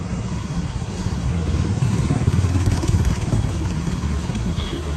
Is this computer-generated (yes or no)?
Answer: yes